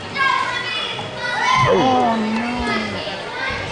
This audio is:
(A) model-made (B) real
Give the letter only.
B